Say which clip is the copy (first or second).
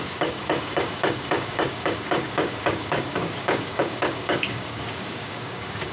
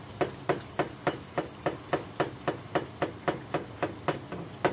first